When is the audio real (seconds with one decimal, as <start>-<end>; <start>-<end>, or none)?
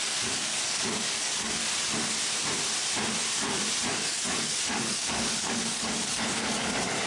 1.6-3.9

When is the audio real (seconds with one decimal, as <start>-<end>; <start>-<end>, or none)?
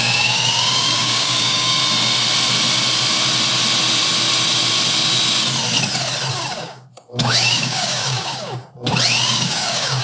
1.8-6.3; 8.6-9.2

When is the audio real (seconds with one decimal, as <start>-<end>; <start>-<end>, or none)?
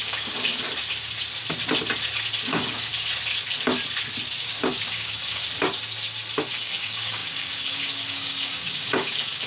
0.5-2.5; 2.9-4.4; 5.4-6.5